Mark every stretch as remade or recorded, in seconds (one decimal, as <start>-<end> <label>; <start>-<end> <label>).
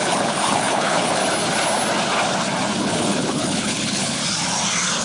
0.0-1.2 remade; 1.2-2.8 recorded; 2.8-4.2 remade; 4.2-5.0 recorded